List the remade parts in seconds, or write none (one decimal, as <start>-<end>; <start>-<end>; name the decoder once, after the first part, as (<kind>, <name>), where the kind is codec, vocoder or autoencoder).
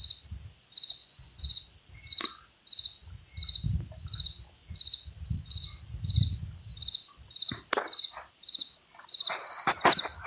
1.0-1.6 (vocoder, Vocos)